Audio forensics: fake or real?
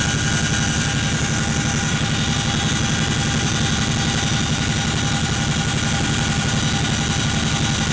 real